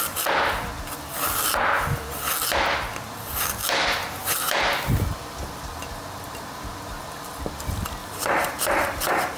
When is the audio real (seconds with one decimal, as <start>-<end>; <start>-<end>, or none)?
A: 0.0-8.0